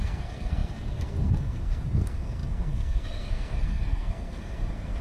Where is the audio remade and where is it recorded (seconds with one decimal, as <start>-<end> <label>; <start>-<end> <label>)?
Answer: 0.0-5.0 remade